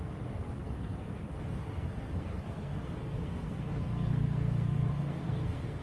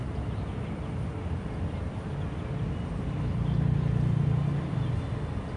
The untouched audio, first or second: second